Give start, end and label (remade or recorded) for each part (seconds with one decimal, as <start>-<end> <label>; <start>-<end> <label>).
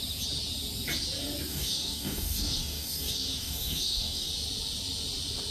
0.0-1.5 recorded; 1.5-4.3 remade; 4.3-5.5 recorded